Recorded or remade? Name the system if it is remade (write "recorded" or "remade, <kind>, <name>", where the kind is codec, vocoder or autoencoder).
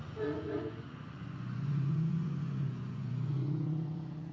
remade, vocoder, Vocos